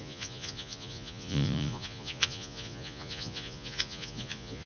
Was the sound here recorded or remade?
remade